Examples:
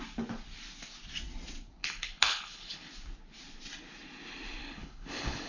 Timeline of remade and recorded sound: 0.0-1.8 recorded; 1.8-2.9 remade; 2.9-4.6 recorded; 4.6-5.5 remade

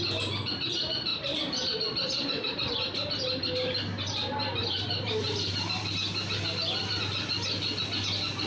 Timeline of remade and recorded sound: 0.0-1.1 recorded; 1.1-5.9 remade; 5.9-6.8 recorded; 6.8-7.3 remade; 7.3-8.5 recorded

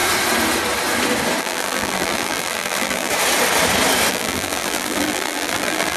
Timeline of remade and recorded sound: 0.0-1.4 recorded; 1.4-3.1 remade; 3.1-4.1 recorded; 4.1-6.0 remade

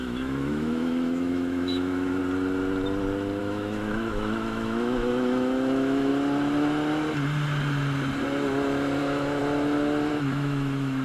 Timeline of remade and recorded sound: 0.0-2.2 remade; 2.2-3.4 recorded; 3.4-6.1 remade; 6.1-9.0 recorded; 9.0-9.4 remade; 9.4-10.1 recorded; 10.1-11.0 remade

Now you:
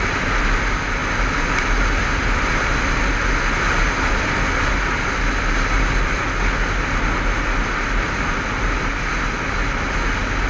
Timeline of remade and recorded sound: 0.0-10.5 recorded

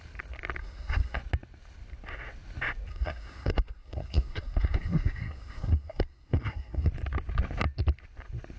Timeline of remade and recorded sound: 0.0-0.6 recorded; 0.6-1.2 remade; 1.2-2.9 recorded; 2.9-6.9 remade; 6.9-8.6 recorded